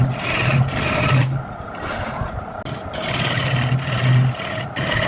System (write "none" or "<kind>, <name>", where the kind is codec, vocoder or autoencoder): none